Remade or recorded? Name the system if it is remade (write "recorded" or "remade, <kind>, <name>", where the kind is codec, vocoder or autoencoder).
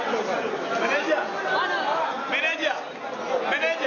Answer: recorded